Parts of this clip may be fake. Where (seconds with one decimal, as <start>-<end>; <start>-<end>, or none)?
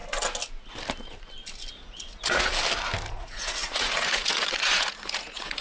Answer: 1.7-2.5; 3.1-5.6